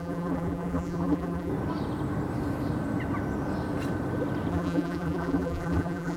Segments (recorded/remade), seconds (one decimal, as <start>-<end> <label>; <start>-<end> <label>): 0.0-1.5 remade; 1.5-4.5 recorded; 4.5-6.2 remade